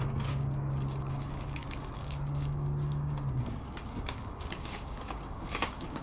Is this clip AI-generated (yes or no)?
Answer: yes